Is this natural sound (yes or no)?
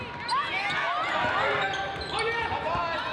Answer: yes